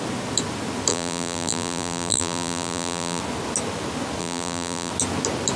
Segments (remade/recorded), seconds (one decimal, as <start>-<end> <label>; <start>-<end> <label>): 0.0-0.9 recorded; 0.9-3.2 remade; 3.2-4.2 recorded; 4.2-4.9 remade; 4.9-5.6 recorded

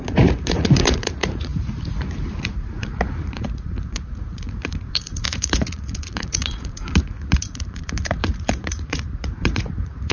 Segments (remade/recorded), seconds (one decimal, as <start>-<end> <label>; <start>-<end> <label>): 0.0-10.1 remade

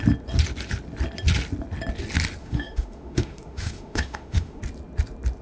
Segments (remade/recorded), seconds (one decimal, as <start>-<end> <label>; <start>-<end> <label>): 0.0-2.4 recorded; 2.4-4.6 remade; 4.6-5.4 recorded

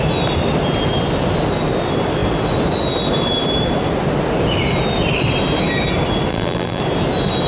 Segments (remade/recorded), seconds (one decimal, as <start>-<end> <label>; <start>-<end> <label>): 0.0-6.3 recorded; 6.3-6.8 remade; 6.8-7.5 recorded

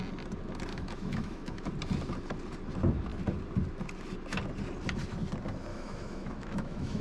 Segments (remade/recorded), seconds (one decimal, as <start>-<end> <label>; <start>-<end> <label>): 0.0-0.7 recorded; 0.7-1.7 remade; 1.7-5.7 recorded; 5.7-7.0 remade

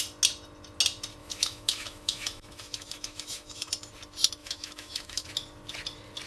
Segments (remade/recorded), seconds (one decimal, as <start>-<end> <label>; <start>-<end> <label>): 0.0-1.2 recorded; 1.2-3.7 remade; 3.7-4.4 recorded; 4.4-5.3 remade; 5.3-6.3 recorded